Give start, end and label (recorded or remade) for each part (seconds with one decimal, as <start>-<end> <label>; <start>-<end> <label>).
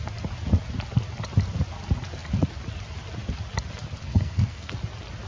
0.0-4.0 recorded; 4.0-4.7 remade; 4.7-5.3 recorded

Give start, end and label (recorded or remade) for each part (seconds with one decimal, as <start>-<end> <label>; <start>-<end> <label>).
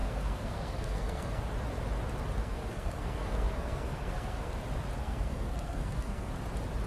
0.0-1.4 remade; 1.4-2.4 recorded; 2.4-4.5 remade; 4.5-5.0 recorded; 5.0-6.3 remade; 6.3-6.9 recorded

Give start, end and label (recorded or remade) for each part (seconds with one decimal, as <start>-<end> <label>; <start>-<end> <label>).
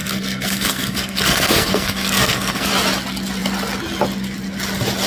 0.0-2.7 remade; 2.7-5.1 recorded